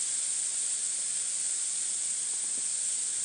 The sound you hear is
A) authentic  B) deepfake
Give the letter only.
A